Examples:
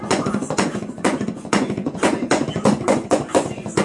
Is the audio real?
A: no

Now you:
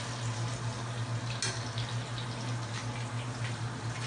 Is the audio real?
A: yes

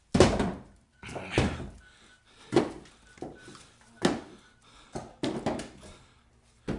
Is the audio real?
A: yes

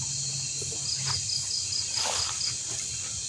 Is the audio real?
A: yes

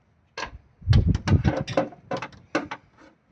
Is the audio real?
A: yes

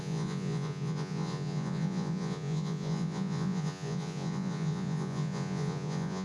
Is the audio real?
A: no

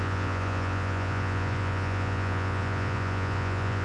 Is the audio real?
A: no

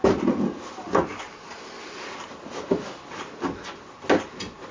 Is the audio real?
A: yes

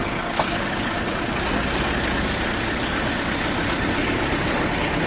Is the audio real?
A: yes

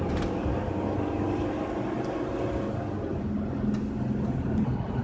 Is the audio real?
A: yes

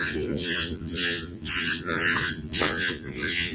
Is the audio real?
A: no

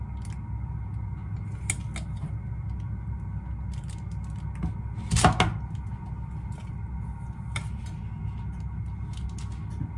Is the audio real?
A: yes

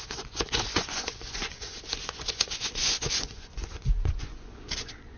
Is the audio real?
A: no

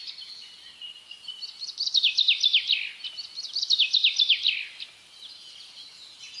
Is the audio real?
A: yes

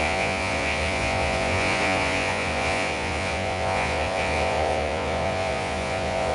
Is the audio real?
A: no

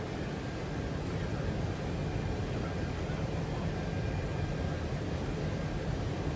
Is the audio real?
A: yes